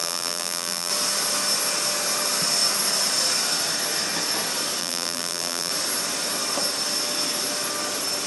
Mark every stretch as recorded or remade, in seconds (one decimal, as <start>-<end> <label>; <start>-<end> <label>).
0.0-0.9 remade; 0.9-4.8 recorded; 4.8-5.7 remade; 5.7-8.3 recorded